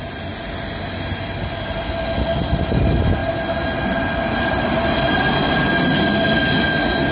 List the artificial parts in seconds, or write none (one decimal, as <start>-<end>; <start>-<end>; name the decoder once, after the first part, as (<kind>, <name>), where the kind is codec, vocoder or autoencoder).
none